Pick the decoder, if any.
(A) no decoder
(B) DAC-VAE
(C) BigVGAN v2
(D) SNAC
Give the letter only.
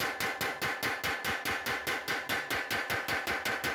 A